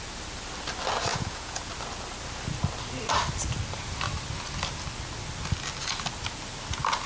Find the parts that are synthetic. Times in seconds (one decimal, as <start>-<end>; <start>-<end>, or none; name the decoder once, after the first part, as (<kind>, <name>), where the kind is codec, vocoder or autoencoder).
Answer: 1.1-1.7 (vocoder, Vocos)